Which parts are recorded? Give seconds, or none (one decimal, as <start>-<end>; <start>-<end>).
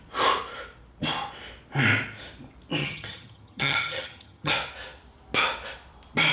0.0-2.8; 4.5-6.3